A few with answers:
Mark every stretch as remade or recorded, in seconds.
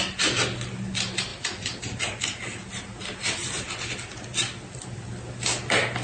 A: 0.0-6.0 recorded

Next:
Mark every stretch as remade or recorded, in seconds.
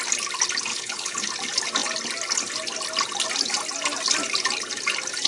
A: 0.0-0.7 recorded; 0.7-1.3 remade; 1.3-5.3 recorded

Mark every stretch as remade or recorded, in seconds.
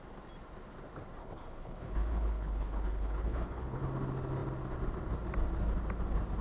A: 0.0-1.2 recorded; 1.2-3.8 remade; 3.8-6.4 recorded